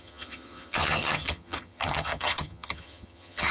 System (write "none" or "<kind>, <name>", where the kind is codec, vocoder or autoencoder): vocoder, HiFi-GAN